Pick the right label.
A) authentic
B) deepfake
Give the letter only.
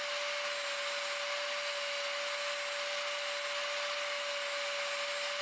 A